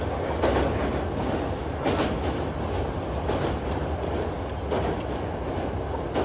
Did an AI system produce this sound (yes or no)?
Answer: no